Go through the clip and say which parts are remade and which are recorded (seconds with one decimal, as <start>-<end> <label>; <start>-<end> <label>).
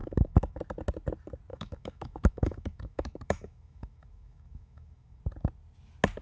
0.0-0.6 remade; 0.6-1.5 recorded; 1.5-5.2 remade; 5.2-6.2 recorded